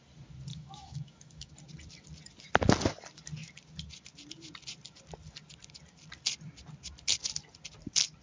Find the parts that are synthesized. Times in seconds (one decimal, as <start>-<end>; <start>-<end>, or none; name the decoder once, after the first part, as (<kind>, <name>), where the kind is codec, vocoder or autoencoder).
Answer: 0.5-1.5 (autoencoder, DAC-VAE)

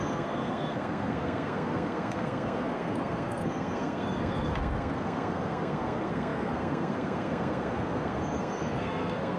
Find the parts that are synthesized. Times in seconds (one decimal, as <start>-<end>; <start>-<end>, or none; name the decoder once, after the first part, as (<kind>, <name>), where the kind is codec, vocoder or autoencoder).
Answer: 0.0-9.4 (codec, SNAC)